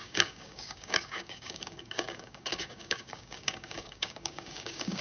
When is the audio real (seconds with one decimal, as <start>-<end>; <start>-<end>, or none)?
none